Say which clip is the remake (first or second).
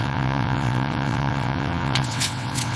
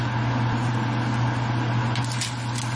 first